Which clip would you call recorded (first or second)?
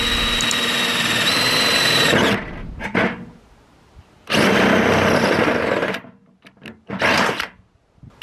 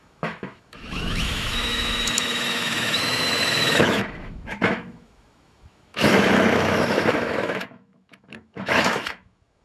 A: first